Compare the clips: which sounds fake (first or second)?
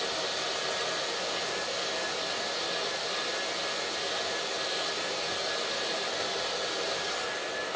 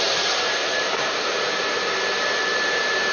second